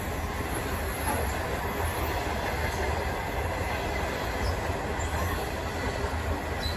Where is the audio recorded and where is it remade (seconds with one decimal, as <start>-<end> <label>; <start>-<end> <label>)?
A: 0.0-6.8 recorded